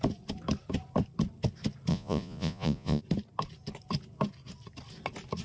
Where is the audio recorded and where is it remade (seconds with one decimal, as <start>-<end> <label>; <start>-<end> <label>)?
0.0-1.9 recorded; 1.9-3.0 remade; 3.0-5.4 recorded

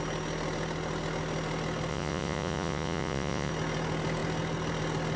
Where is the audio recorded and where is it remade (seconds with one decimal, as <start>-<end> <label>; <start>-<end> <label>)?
0.0-1.9 recorded; 1.9-3.5 remade; 3.5-5.2 recorded

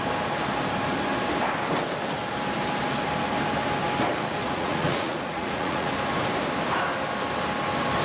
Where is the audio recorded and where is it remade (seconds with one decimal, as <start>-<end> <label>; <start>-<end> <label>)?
0.0-4.4 recorded; 4.4-5.9 remade; 5.9-8.0 recorded

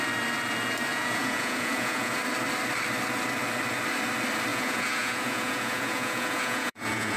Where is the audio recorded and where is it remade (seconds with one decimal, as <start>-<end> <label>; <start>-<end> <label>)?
0.0-0.9 recorded; 0.9-2.2 remade; 2.2-4.5 recorded; 4.5-7.2 remade

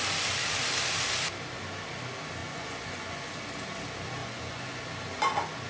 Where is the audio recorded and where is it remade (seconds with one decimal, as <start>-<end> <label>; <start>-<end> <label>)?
0.0-2.4 recorded; 2.4-3.3 remade; 3.3-4.2 recorded; 4.2-4.8 remade; 4.8-5.7 recorded

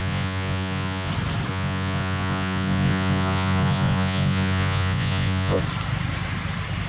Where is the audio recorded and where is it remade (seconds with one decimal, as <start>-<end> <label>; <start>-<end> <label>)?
0.0-1.1 remade; 1.1-1.5 recorded; 1.5-5.6 remade; 5.6-6.9 recorded

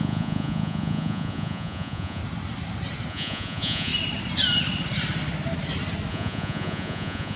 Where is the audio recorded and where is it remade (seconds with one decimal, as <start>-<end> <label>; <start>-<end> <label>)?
0.0-2.2 remade; 2.2-3.1 recorded; 3.1-3.9 remade; 3.9-6.1 recorded; 6.1-7.4 remade